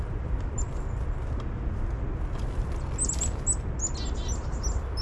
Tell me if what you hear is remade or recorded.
recorded